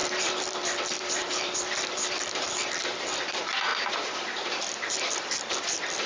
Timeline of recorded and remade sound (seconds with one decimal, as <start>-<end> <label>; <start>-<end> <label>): 0.0-6.1 remade